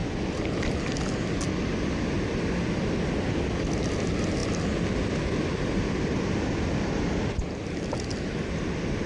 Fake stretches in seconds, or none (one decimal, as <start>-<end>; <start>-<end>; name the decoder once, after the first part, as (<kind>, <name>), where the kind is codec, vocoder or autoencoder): none